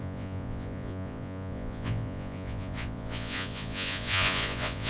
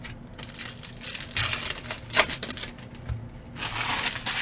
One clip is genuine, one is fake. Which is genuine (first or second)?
second